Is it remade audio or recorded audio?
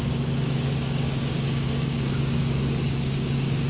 remade